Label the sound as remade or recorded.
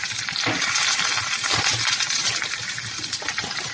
recorded